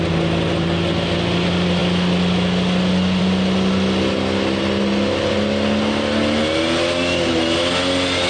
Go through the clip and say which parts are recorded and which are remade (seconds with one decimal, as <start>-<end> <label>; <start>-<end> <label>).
0.0-8.3 recorded